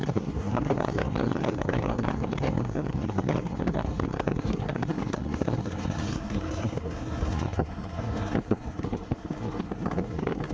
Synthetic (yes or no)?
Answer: yes